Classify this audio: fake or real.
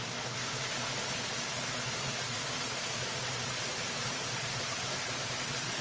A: real